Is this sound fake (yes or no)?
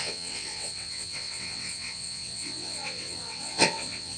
yes